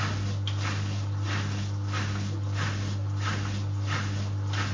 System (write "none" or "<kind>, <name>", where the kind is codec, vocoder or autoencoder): none